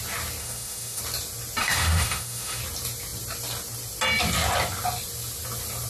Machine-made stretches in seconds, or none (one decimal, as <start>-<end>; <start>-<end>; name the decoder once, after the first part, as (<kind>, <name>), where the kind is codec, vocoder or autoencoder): 0.4-1.0 (autoencoder, DAC-VAE); 1.6-2.6

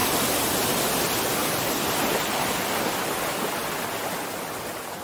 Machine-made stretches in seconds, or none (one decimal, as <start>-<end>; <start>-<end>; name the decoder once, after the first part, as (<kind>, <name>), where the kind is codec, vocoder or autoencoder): none

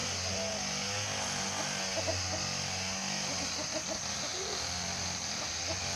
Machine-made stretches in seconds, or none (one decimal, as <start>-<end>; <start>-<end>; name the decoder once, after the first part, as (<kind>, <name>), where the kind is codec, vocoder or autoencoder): none

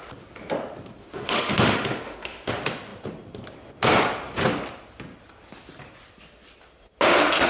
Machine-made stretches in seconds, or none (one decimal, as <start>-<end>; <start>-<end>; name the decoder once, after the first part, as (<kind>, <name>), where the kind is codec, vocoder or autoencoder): 1.0-2.5 (autoencoder, DAC-VAE)

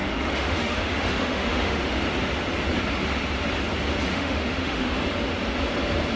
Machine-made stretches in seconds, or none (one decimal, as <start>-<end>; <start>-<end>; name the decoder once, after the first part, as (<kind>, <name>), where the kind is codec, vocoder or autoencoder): 0.0-2.0 (autoencoder, DAC-VAE); 4.1-4.9